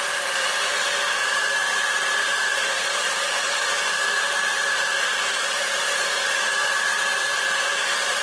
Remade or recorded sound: recorded